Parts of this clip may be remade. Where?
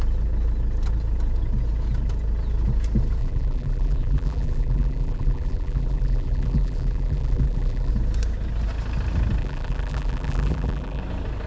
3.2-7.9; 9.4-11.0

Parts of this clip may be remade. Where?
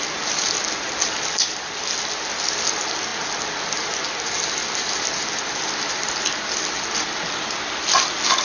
none